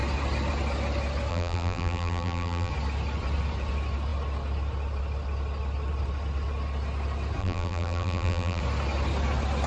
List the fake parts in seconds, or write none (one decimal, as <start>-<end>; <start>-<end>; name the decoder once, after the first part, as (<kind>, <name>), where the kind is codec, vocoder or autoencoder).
1.3-2.7 (vocoder, BigVGAN v2); 7.4-8.6